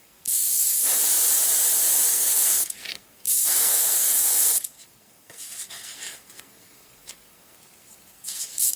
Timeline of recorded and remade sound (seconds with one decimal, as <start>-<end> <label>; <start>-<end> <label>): 0.0-0.7 remade; 0.7-2.1 recorded; 2.1-8.8 remade